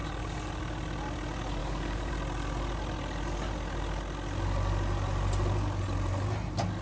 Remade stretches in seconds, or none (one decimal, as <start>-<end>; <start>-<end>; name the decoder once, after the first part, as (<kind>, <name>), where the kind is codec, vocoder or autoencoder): 1.6-2.1 (codec, DAC)